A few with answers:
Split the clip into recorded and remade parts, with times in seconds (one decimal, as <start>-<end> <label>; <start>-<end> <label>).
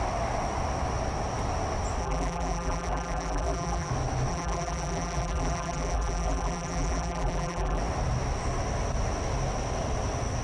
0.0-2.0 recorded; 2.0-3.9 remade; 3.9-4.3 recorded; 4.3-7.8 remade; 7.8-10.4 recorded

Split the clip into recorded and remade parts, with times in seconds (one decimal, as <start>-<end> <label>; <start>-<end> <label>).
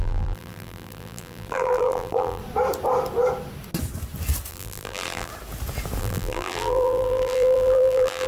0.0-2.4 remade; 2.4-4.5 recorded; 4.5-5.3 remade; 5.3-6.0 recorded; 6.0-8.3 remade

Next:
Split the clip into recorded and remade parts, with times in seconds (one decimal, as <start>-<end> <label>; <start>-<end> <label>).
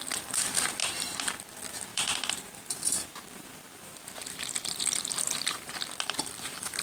0.0-0.8 recorded; 0.8-1.5 remade; 1.5-1.9 recorded; 1.9-5.7 remade; 5.7-6.8 recorded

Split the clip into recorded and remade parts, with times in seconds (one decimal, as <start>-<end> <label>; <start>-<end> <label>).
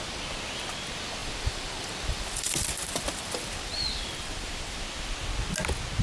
0.0-1.2 recorded; 1.2-4.8 remade; 4.8-6.0 recorded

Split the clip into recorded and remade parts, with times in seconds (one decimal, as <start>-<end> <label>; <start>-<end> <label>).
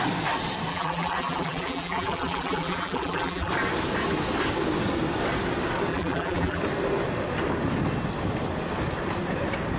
0.0-0.7 recorded; 0.7-3.5 remade; 3.5-5.9 recorded; 5.9-6.6 remade; 6.6-9.8 recorded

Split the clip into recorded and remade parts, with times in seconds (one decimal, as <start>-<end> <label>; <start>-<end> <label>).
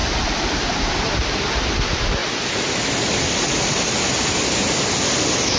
0.0-1.1 remade; 1.1-5.6 recorded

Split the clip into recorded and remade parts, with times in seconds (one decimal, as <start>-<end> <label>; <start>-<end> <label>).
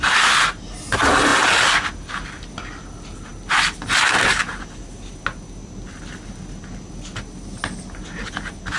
0.0-8.8 recorded